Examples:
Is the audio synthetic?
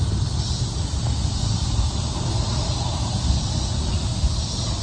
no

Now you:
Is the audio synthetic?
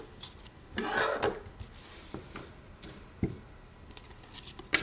no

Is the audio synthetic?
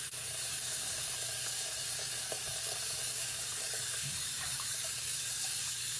yes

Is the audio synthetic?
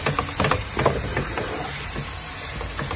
yes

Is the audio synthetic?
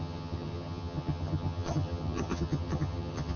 yes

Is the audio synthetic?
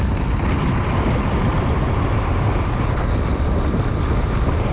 no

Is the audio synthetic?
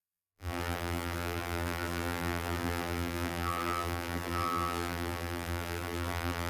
yes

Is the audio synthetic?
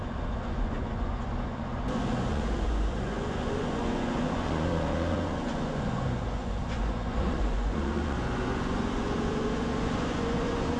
yes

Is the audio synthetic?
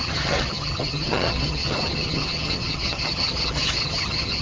yes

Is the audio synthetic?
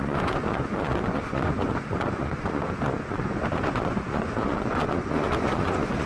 yes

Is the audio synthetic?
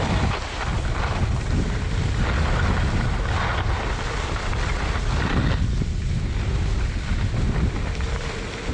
no